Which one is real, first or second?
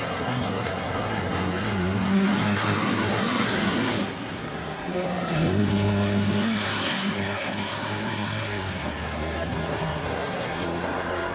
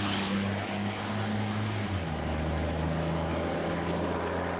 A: second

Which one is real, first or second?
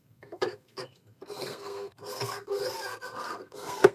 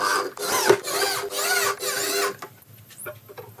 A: second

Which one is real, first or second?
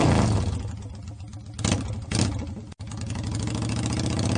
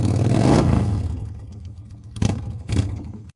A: first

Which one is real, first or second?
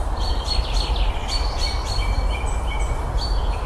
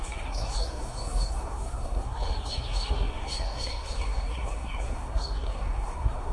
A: first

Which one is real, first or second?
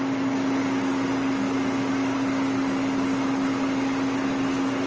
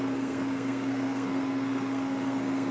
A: first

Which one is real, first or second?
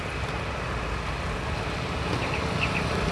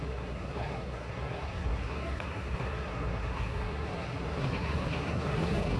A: first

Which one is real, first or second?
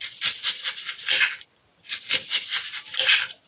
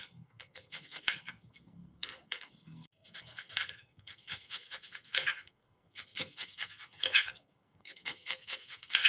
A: first